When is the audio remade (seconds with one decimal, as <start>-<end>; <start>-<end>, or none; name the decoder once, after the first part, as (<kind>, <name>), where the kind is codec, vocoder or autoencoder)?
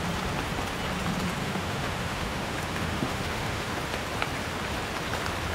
1.4-3.8 (autoencoder, DAC-VAE)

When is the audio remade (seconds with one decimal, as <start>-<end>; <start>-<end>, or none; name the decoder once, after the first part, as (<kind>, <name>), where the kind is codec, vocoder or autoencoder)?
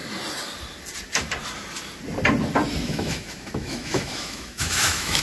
2.8-5.2 (autoencoder, DAC-VAE)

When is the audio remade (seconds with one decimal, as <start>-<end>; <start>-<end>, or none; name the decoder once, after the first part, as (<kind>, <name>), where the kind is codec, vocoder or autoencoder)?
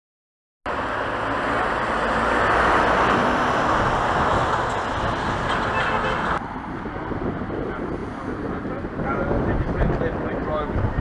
none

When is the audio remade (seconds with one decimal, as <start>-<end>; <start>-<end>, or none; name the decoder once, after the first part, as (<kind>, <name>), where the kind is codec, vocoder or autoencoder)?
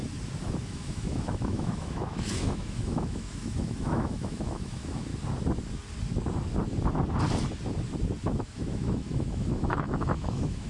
0.6-5.1 (autoencoder, DAC-VAE); 8.4-10.7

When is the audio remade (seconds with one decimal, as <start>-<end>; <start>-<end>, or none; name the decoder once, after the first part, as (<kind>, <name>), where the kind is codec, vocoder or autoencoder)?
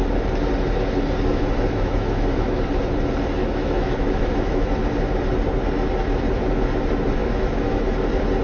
1.3-2.6 (autoencoder, DAC-VAE); 3.4-4.7; 7.2-7.9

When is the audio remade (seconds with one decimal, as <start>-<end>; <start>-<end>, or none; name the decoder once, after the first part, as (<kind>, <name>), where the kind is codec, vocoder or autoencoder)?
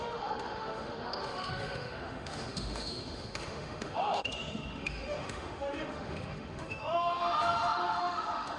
0.0-8.6 (autoencoder, DAC-VAE)